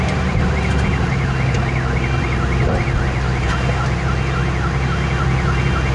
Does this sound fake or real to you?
real